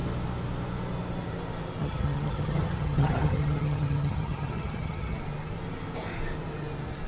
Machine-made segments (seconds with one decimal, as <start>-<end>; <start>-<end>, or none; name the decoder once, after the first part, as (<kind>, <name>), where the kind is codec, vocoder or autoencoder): 1.8-5.2 (vocoder, HiFi-GAN)